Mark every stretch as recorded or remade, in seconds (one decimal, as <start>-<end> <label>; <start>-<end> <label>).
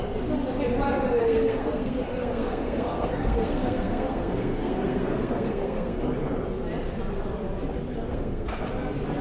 0.0-1.2 recorded; 1.2-6.0 remade; 6.0-8.1 recorded; 8.1-8.6 remade; 8.6-9.2 recorded